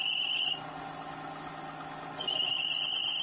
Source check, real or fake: real